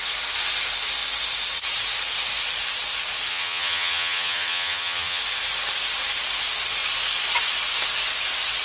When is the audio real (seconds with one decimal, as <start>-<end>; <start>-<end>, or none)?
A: 0.0-3.3; 5.2-8.6